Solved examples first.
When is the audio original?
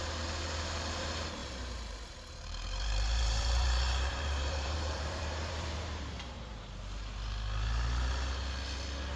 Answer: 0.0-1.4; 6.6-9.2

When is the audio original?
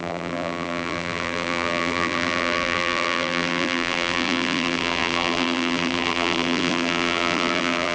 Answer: none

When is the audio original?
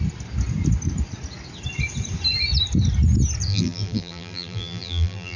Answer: 0.0-3.5